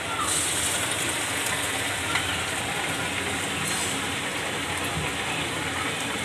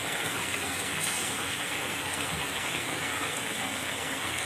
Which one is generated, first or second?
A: second